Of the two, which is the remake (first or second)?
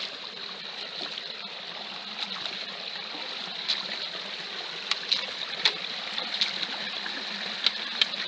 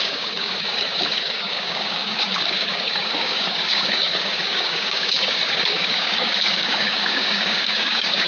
second